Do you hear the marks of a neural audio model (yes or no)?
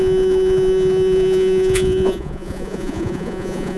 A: yes